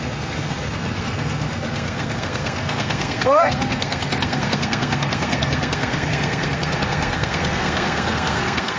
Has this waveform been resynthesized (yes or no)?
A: yes